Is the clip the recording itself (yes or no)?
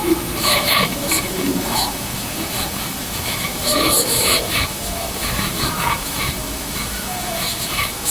no